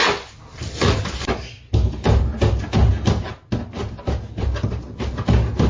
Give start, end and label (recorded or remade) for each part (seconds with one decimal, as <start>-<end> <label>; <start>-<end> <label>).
0.0-5.7 recorded